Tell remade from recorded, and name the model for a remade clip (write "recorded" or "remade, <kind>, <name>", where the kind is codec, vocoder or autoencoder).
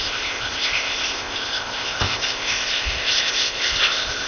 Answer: remade, codec, ZipCodec